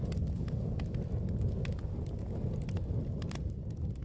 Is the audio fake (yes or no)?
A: no